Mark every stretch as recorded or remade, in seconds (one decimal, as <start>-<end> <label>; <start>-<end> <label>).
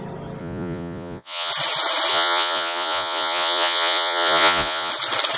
0.0-0.4 recorded; 0.4-1.5 remade; 1.5-2.1 recorded; 2.1-4.9 remade; 4.9-5.4 recorded